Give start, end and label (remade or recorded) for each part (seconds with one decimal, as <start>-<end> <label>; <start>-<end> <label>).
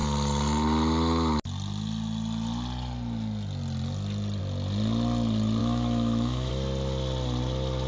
0.0-5.6 recorded; 5.6-6.5 remade; 6.5-7.9 recorded